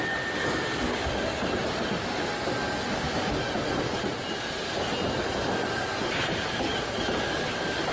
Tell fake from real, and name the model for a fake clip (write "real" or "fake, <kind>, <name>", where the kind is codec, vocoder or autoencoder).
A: real